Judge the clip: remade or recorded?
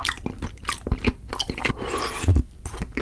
recorded